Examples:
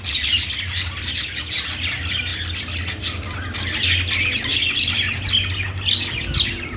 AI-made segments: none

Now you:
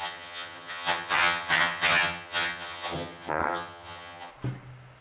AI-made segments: 0.0-4.3

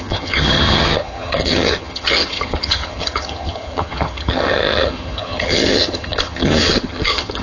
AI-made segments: 0.0-7.4

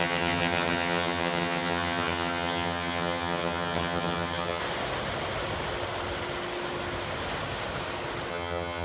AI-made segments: 0.0-4.6; 8.3-8.8

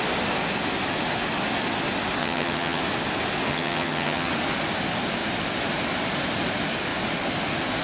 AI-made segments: 2.2-2.8; 3.5-4.3